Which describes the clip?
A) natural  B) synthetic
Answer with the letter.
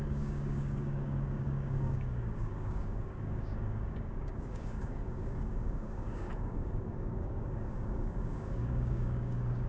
B